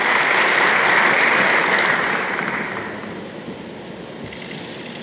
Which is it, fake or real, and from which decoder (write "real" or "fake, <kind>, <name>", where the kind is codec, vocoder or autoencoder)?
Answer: real